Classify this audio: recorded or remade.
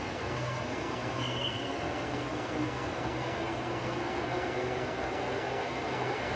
remade